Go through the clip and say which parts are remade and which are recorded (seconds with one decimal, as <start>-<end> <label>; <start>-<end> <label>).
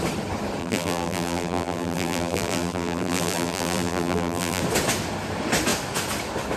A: 0.0-0.6 recorded; 0.6-4.6 remade; 4.6-6.6 recorded